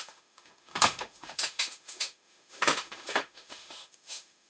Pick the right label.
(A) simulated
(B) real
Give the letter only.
A